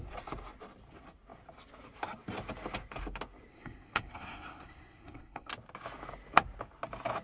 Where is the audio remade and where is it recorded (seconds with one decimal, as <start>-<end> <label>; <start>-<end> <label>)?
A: 0.0-3.5 recorded; 3.5-5.5 remade; 5.5-7.2 recorded